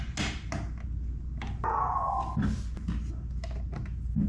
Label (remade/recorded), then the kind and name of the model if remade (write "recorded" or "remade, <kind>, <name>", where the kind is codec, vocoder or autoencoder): recorded